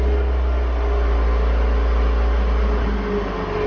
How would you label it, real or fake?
real